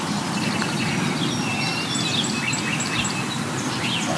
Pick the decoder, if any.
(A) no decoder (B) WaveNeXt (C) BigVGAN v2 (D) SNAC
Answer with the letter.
A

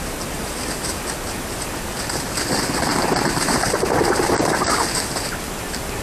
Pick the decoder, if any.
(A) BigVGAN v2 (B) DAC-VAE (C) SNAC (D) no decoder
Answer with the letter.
D